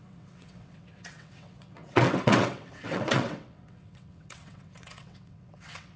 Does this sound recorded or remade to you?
remade